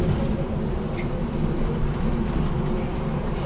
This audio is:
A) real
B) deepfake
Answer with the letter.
A